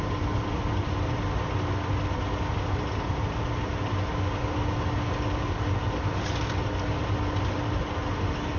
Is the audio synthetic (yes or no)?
no